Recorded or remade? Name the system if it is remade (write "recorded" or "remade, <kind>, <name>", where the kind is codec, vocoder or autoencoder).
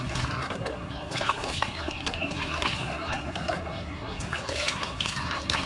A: remade, codec, SNAC